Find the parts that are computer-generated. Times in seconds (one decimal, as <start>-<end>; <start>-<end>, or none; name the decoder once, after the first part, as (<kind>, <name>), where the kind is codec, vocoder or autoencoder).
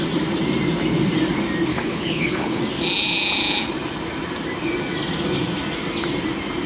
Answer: 1.7-2.6 (codec, HILCodec)